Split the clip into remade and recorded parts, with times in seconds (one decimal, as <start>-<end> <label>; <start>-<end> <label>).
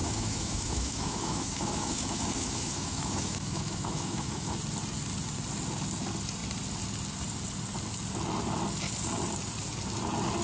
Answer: 0.0-4.5 remade; 4.5-10.4 recorded